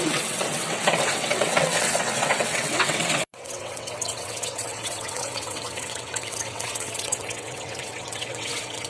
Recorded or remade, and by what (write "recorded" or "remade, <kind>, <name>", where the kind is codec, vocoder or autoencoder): remade, vocoder, WaveNeXt